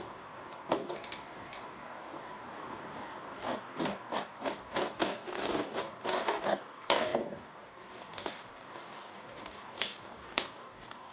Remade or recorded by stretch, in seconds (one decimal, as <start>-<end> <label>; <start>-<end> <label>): 0.0-11.1 remade